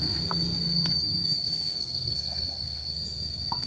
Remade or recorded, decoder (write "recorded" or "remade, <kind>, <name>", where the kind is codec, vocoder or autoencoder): remade, codec, SNAC